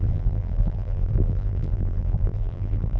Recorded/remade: remade